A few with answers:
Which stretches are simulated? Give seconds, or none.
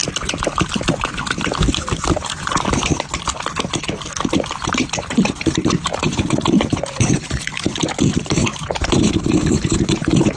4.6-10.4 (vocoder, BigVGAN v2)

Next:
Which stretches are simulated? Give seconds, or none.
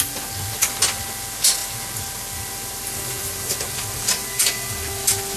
none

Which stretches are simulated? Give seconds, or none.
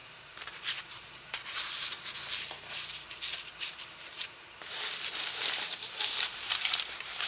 0.0-7.3 (vocoder, BigVGAN v2)